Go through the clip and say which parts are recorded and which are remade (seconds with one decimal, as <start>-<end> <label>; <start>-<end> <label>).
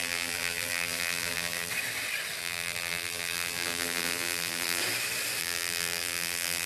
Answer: 0.0-1.7 remade; 1.7-2.4 recorded; 2.4-4.8 remade; 4.8-5.4 recorded; 5.4-6.7 remade